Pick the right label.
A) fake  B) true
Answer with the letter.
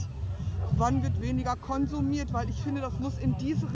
B